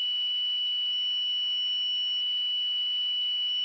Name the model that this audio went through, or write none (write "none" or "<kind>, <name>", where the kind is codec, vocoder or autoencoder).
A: none